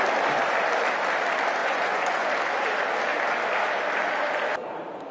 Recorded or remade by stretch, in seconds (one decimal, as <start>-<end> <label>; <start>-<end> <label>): 0.0-1.6 recorded; 1.6-2.3 remade; 2.3-5.1 recorded